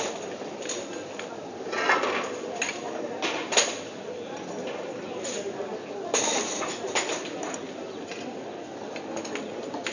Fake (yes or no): no